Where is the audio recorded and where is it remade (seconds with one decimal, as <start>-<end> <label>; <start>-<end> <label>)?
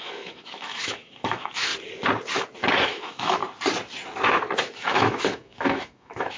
0.0-1.7 remade; 1.7-2.7 recorded; 2.7-3.4 remade; 3.4-4.6 recorded; 4.6-6.4 remade